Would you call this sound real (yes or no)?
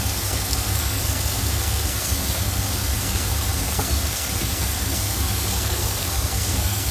no